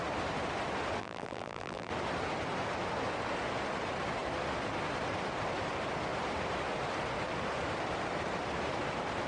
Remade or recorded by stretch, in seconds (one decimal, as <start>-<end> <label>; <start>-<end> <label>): 0.0-1.0 recorded; 1.0-1.9 remade; 1.9-9.3 recorded